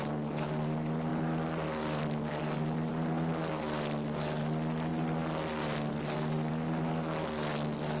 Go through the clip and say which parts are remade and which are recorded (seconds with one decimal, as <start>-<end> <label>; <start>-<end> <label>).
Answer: 0.0-8.0 recorded